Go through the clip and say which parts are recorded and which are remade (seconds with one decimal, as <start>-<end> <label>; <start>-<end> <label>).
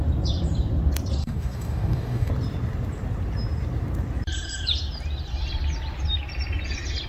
0.0-1.2 recorded; 1.2-2.3 remade; 2.3-7.1 recorded